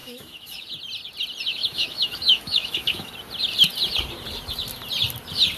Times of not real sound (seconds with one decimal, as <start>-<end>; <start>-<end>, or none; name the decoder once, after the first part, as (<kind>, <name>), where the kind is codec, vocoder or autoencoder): 0.0-0.7 (autoencoder, DAC-VAE); 1.5-3.1

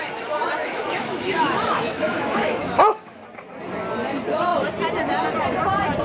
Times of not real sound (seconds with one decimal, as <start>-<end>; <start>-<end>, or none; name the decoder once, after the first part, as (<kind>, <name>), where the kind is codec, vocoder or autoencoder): 0.6-3.2 (autoencoder, DAC-VAE)